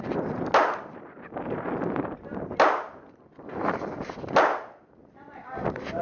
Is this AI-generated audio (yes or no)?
no